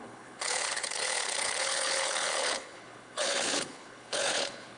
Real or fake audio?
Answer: fake